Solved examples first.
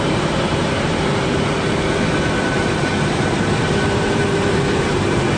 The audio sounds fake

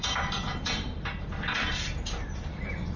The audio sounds fake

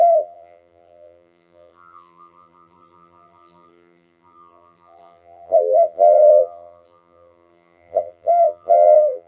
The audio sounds fake